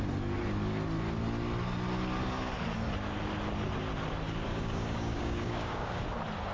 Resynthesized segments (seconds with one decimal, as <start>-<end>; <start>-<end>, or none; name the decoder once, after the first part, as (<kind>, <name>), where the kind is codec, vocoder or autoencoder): 4.5-6.0 (codec, DAC)